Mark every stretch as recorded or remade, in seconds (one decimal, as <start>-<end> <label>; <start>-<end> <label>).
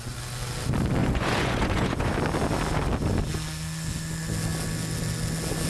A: 0.0-1.0 recorded; 1.0-2.1 remade; 2.1-5.7 recorded